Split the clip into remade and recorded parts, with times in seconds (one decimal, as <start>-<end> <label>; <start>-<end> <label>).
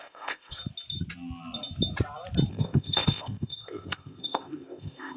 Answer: 0.0-0.6 remade; 0.6-2.5 recorded; 2.5-5.2 remade